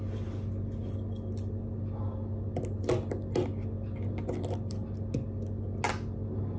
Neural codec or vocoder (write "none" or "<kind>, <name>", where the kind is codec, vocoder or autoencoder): none